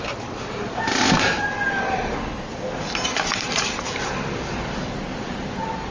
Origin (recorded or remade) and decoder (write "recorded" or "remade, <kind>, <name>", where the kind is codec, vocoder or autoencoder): recorded